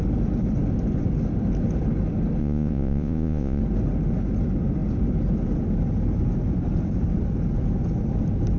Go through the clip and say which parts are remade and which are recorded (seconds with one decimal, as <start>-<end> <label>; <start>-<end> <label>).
0.0-2.4 recorded; 2.4-3.6 remade; 3.6-8.6 recorded